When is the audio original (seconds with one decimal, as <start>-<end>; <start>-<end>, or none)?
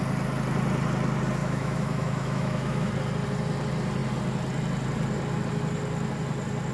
0.0-1.4; 2.9-6.7